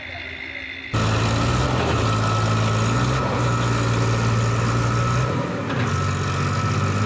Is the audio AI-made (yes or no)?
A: no